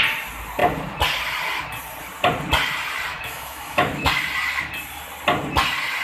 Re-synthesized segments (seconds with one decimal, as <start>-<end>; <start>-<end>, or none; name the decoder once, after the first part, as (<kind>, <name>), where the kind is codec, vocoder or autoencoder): 3.1-4.1 (autoencoder, DAC-VAE)